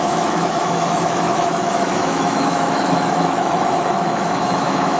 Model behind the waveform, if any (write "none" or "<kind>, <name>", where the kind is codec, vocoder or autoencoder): autoencoder, DAC-VAE